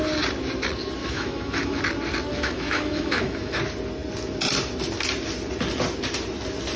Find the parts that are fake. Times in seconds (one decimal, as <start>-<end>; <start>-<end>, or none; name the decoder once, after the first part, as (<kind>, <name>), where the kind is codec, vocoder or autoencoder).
1.0-1.8 (autoencoder, DAC-VAE); 2.3-3.6